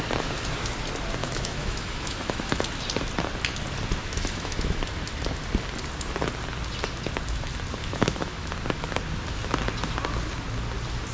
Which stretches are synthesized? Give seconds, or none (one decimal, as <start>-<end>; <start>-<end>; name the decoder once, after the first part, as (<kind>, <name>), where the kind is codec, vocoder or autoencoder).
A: 1.2-2.6 (autoencoder, DAC-VAE); 4.0-4.8; 7.8-8.5